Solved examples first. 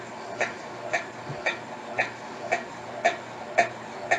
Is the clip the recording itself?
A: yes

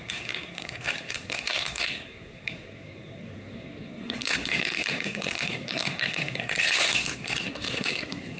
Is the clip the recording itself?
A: no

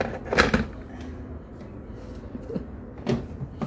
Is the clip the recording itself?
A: yes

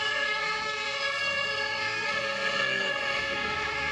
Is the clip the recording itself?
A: no